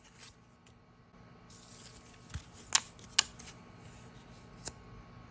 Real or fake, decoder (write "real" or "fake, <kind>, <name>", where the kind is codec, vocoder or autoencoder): real